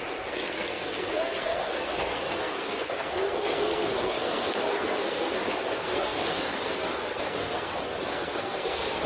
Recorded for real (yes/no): no